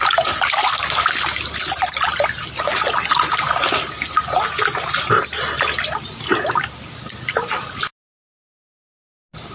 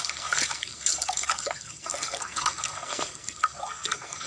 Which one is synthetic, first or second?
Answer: second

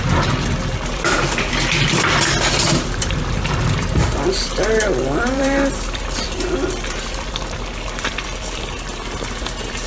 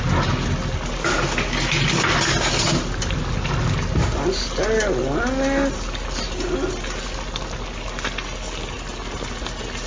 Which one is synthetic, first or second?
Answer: first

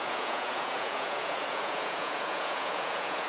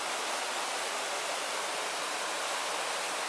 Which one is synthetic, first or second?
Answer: first